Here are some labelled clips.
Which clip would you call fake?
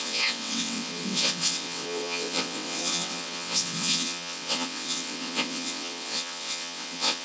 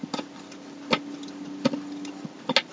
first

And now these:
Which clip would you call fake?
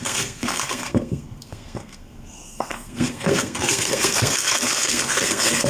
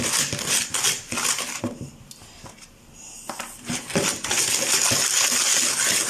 first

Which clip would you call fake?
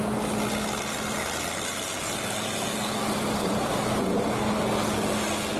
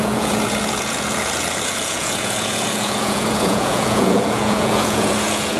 second